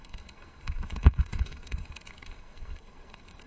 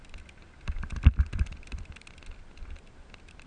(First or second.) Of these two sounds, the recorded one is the second